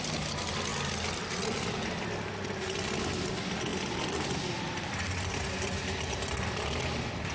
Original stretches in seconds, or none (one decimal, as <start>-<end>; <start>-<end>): 0.0-7.3